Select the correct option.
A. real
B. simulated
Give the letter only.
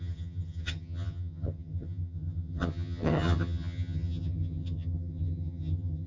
B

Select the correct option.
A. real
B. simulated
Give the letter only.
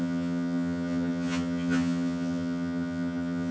B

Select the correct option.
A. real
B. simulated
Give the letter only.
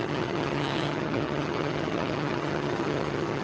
B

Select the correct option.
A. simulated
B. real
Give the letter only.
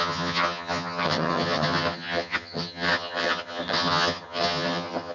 A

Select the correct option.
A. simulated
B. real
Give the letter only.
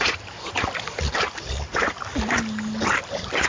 B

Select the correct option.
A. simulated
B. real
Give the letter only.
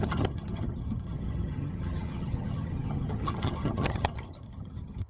A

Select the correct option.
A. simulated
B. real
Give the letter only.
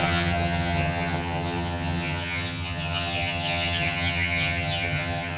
A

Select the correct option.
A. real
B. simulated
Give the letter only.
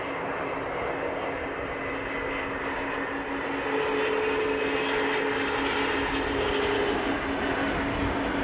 A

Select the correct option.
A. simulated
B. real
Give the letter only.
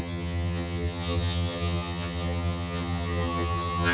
A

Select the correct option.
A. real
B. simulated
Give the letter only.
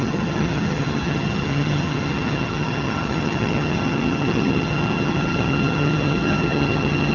B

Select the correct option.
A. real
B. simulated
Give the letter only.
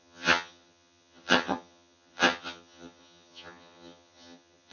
B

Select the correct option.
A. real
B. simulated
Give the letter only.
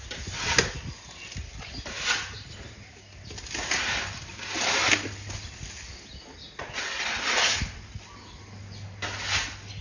A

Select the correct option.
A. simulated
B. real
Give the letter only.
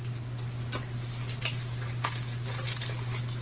B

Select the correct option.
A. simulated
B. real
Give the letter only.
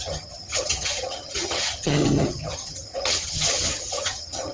A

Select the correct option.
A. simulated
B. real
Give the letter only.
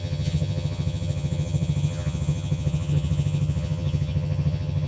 A